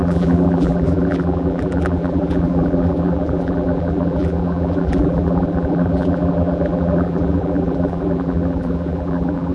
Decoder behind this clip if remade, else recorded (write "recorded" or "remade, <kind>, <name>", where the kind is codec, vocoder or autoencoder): remade, vocoder, BigVGAN v2